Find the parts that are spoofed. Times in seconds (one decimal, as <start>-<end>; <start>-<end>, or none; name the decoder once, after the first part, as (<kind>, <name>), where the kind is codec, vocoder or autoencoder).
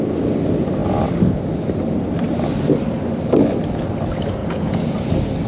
4.4-5.0 (vocoder, Vocos)